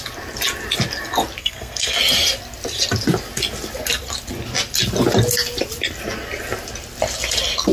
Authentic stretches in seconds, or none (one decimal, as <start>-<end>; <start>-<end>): 0.0-1.4; 2.0-7.7